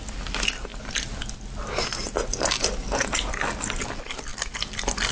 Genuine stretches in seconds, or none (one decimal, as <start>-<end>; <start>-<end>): 0.0-5.1